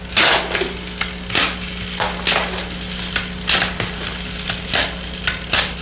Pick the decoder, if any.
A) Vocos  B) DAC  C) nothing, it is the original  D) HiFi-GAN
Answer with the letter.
C